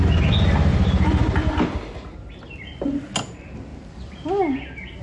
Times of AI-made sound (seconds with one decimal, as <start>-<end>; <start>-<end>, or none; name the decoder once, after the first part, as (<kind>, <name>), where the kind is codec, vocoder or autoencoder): 0.7-1.5 (vocoder, BigVGAN v2)